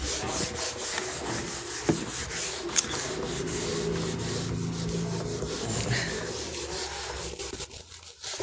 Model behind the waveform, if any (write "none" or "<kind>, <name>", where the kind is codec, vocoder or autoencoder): none